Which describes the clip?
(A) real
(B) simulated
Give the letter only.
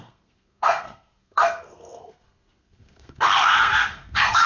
B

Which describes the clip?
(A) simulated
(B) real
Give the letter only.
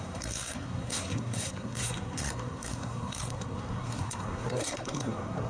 A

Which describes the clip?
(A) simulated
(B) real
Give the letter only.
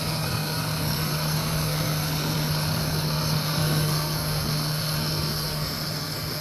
A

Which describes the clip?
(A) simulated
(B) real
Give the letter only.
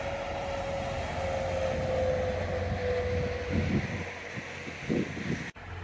B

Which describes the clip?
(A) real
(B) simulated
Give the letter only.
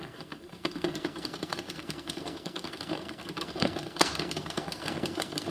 B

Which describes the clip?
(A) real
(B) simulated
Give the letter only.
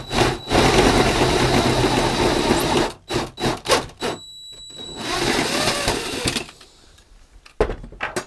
A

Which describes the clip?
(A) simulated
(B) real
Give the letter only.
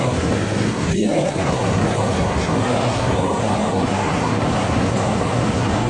A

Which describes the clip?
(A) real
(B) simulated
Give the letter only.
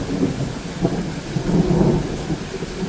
A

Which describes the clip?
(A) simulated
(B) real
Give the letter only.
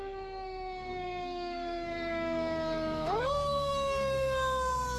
A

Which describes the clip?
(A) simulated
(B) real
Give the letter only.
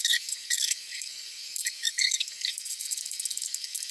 A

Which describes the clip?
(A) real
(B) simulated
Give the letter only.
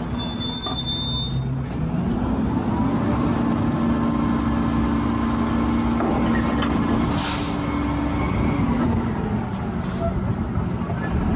A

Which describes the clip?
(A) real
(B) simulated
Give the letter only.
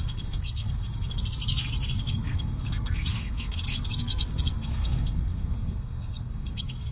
B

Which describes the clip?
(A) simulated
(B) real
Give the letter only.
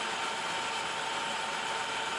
B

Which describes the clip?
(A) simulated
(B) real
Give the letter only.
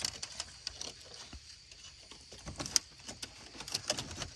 B